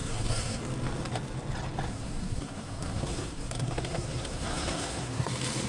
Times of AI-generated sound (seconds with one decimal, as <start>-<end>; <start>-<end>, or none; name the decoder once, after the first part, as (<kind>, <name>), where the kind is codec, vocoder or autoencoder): 0.0-0.6 (codec, SNAC); 1.9-5.3

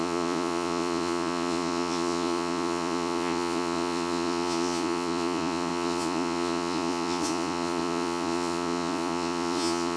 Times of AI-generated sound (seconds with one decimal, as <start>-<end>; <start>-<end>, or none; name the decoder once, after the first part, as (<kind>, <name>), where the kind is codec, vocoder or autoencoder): 0.0-10.0 (vocoder, Vocos)